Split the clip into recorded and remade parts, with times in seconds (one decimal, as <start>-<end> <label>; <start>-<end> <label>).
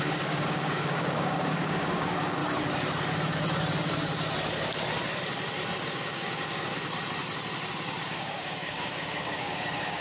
0.0-2.4 remade; 2.4-5.7 recorded; 5.7-6.7 remade; 6.7-8.0 recorded; 8.0-10.0 remade